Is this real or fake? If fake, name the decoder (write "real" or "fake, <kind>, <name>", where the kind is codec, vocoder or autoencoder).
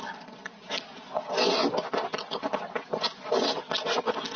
real